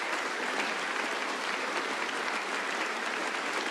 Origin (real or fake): real